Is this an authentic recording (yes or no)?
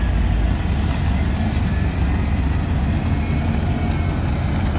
yes